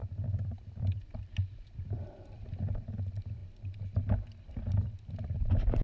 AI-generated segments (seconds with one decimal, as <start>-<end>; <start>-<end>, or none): 0.0-3.4; 5.1-5.8